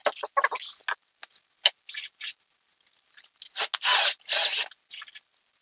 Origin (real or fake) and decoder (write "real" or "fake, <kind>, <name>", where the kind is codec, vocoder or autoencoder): real